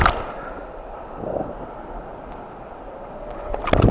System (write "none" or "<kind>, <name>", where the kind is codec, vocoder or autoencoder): none